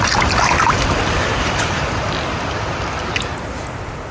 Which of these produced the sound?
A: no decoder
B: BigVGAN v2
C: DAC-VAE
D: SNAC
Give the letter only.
A